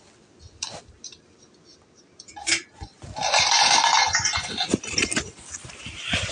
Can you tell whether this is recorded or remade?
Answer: recorded